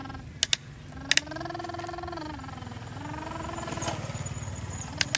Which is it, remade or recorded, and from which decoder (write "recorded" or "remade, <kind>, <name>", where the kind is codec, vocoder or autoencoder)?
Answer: recorded